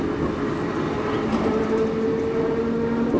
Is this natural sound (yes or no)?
yes